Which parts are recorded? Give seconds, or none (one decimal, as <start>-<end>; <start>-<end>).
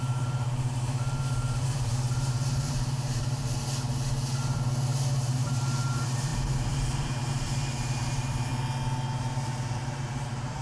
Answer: 3.4-4.3; 8.5-9.2